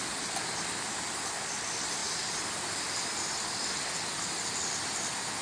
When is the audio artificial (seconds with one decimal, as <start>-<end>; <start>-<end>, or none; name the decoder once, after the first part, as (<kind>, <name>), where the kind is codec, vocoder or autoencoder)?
none